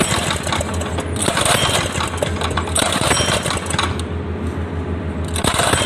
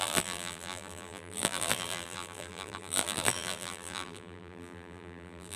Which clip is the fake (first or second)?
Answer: second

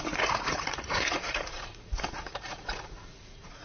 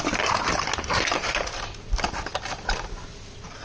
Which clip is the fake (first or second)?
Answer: first